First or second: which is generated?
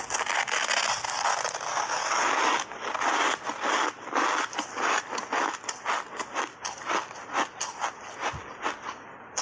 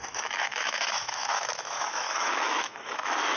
second